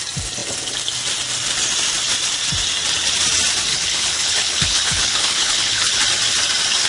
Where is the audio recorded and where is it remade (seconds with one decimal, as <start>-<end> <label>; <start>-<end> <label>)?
0.0-3.7 recorded; 3.7-6.0 remade; 6.0-6.9 recorded